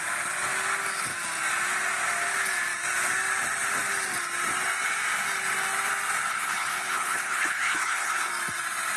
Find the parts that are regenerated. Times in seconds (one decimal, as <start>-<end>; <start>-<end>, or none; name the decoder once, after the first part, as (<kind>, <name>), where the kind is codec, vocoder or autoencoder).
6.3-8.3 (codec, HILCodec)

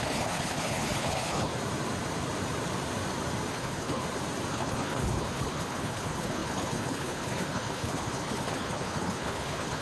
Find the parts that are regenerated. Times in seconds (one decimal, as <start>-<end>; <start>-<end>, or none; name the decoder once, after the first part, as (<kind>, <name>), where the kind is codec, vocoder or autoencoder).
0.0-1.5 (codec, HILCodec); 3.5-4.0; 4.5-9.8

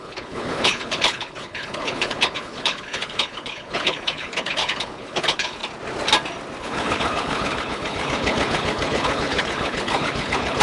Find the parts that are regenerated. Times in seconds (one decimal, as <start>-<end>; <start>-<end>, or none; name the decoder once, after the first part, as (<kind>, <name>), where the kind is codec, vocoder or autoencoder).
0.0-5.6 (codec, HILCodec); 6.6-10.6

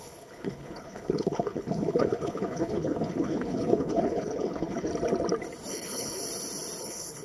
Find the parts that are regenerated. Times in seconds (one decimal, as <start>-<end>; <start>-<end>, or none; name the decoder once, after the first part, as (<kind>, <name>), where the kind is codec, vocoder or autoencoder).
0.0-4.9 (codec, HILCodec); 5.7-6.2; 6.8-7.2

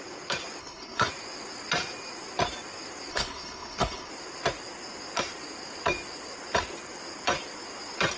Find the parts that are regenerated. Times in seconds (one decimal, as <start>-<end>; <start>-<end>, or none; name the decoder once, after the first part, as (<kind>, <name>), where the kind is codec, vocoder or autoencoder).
0.6-1.1 (codec, HILCodec); 3.1-4.1

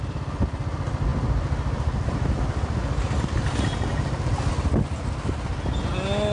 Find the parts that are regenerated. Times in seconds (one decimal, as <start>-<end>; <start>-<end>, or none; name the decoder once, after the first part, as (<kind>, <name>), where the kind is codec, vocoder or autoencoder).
none